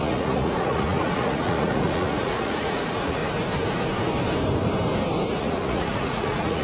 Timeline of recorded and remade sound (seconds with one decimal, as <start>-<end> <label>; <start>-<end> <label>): 0.0-3.2 remade; 3.2-5.4 recorded; 5.4-6.6 remade